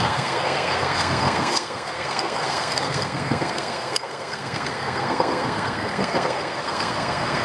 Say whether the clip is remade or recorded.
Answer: remade